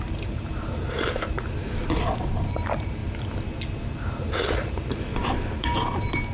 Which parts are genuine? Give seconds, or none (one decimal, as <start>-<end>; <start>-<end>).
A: 3.0-3.9